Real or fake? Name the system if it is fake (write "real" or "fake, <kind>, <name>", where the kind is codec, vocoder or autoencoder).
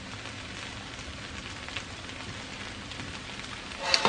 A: real